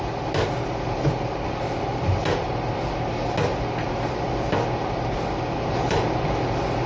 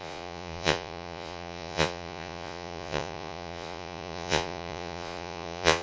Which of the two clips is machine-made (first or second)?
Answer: second